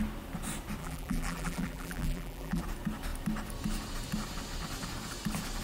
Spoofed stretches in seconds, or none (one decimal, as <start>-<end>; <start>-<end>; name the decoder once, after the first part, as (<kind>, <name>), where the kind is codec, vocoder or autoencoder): 0.8-2.6 (vocoder, BigVGAN v2)